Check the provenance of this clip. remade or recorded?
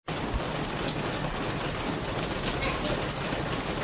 recorded